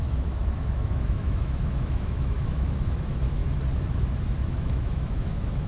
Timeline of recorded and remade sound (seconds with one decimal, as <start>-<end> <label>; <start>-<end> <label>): 0.0-3.4 remade; 3.4-4.3 recorded; 4.3-5.7 remade